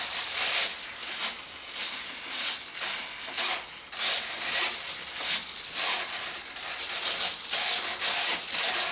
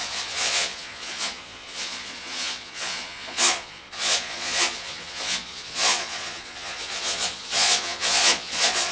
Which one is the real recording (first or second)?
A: first